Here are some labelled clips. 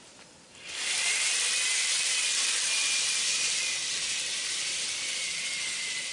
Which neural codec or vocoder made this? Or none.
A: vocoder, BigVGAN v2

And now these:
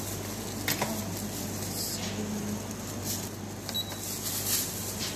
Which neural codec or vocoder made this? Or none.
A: none